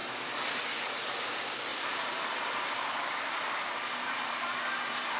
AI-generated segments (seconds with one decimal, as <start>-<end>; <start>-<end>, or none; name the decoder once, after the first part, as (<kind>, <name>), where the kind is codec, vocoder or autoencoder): 1.7-4.6 (vocoder, BigVGAN v2)